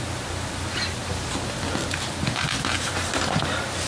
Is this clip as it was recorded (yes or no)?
yes